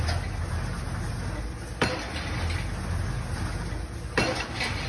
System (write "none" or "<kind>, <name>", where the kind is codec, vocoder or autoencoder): none